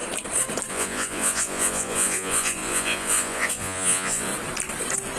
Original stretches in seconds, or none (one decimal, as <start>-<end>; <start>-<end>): 0.0-0.7; 4.3-5.2